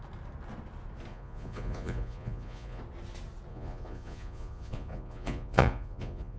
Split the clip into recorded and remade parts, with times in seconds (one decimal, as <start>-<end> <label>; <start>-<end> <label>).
0.0-1.1 recorded; 1.1-2.8 remade; 2.8-3.5 recorded; 3.5-6.4 remade